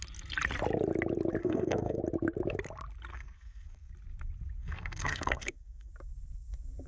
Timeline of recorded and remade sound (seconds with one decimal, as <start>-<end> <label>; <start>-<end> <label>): 0.0-1.4 recorded; 1.4-2.0 remade; 2.0-3.1 recorded; 3.1-3.9 remade; 3.9-4.6 recorded; 4.6-5.9 remade; 5.9-6.9 recorded